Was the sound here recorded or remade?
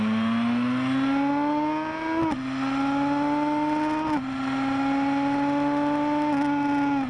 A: recorded